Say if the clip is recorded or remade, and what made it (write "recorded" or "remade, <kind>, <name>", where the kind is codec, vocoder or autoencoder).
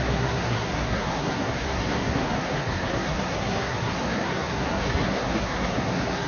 remade, codec, SNAC